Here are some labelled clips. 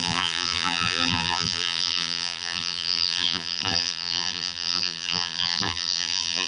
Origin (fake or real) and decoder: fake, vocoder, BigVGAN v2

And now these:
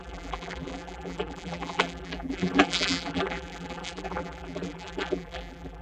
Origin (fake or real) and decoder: fake, vocoder, BigVGAN v2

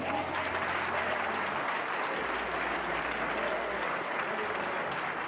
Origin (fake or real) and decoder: real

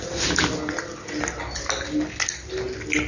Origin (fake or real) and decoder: real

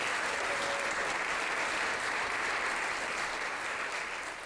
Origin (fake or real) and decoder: fake, vocoder, BigVGAN v2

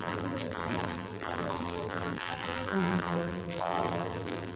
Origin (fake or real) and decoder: fake, vocoder, BigVGAN v2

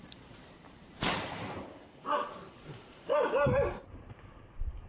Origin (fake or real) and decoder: fake, vocoder, BigVGAN v2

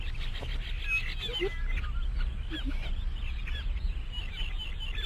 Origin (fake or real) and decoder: real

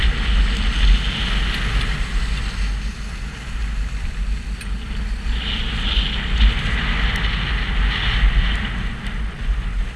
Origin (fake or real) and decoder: real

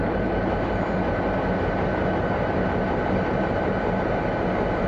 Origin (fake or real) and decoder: fake, vocoder, BigVGAN v2